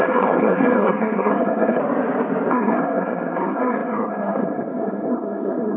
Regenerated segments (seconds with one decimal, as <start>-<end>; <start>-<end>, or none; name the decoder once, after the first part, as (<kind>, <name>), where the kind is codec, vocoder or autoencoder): 0.0-1.8 (codec, SNAC); 2.5-5.8